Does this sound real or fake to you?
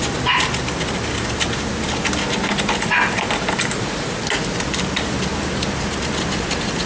real